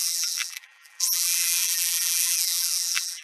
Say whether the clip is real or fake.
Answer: fake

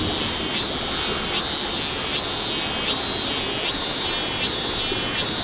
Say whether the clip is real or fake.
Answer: real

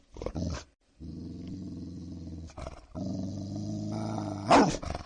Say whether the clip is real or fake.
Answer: real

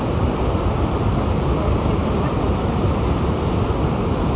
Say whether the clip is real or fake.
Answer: real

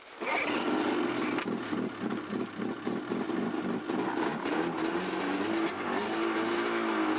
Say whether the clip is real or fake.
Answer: real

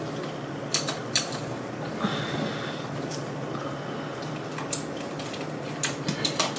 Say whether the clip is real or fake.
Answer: real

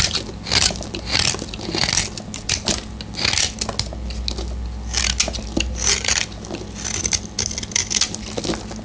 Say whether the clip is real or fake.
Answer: real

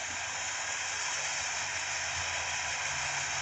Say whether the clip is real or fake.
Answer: real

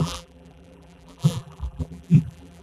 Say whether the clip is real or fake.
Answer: fake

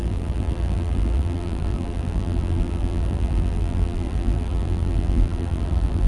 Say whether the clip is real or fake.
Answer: fake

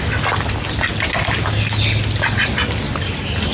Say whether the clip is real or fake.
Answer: real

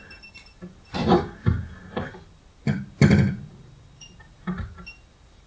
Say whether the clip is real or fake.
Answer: fake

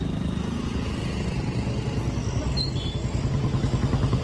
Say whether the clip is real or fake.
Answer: real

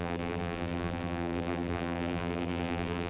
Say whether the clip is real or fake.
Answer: fake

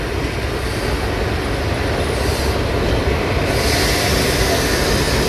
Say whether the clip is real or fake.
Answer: real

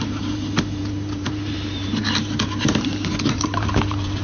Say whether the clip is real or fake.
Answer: fake